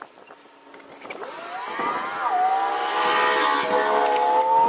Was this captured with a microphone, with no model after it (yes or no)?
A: yes